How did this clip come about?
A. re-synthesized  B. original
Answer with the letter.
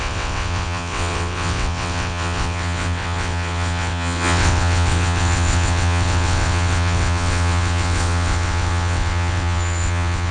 A